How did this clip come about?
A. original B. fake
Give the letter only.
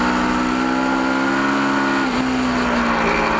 A